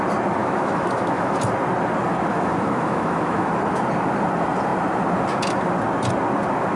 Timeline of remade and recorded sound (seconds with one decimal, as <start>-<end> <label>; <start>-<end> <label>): 0.0-0.4 recorded; 0.4-1.4 remade; 1.4-2.3 recorded; 2.3-3.5 remade; 3.5-6.8 recorded